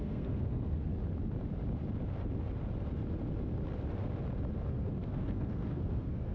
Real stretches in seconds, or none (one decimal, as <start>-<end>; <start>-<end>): 0.9-4.7